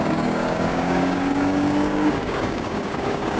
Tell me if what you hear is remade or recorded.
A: remade